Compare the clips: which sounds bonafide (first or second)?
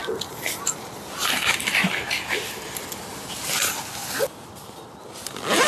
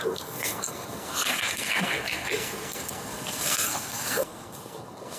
first